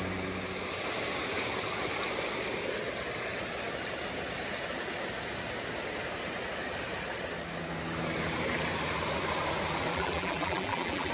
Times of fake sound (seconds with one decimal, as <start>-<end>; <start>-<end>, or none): 9.9-11.1